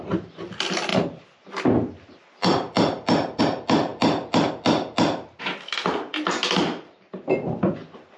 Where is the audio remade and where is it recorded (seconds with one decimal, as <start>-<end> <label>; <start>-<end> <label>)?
0.0-8.2 recorded